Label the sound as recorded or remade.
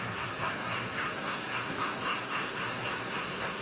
remade